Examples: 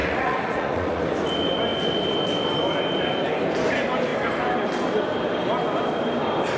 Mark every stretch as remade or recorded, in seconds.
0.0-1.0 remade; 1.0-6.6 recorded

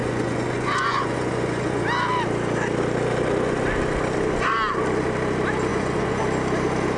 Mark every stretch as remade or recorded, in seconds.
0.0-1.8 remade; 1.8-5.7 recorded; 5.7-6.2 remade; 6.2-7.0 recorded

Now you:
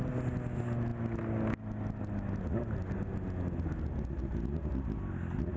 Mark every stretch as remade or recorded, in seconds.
0.0-5.6 recorded